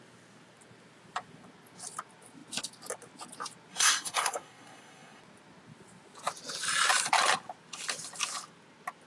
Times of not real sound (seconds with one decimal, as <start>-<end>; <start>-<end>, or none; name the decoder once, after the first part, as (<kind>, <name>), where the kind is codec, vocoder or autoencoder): 3.7-5.2 (codec, SNAC)